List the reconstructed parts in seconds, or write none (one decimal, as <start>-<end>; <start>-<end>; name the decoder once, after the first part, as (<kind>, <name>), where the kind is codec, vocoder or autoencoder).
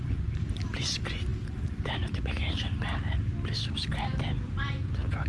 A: none